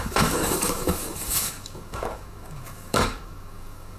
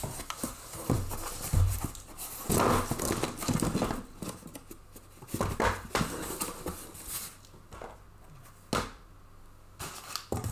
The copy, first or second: first